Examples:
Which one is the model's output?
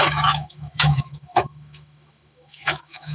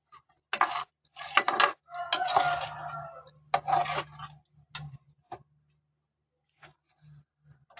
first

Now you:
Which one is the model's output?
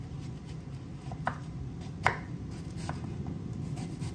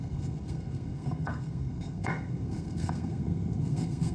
second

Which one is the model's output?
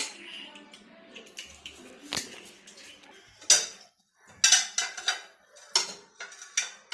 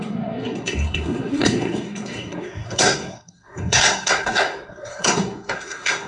second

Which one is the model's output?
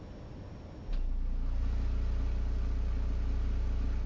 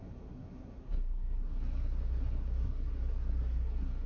second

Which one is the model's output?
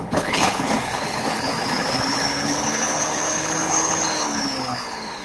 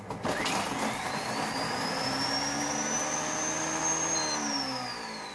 first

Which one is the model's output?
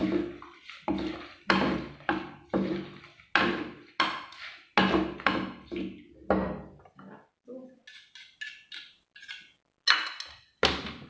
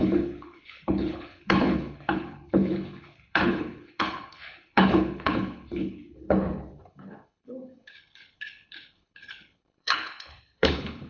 second